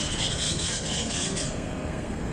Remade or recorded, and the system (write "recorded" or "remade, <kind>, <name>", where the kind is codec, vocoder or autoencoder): remade, codec, SNAC